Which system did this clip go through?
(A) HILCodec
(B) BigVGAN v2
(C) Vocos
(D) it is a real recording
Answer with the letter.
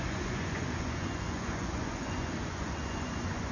C